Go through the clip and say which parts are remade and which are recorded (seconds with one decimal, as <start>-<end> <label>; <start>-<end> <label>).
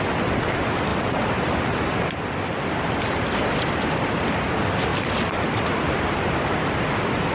0.0-0.9 recorded; 0.9-2.0 remade; 2.0-4.9 recorded; 4.9-6.7 remade; 6.7-7.3 recorded